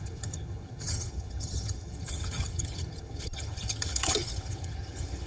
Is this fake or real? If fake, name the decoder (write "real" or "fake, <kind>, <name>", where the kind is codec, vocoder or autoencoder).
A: fake, vocoder, HiFi-GAN